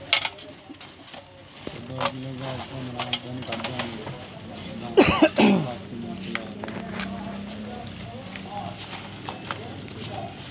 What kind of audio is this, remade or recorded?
recorded